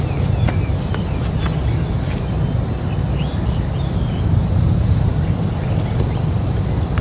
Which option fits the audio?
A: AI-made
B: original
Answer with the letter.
B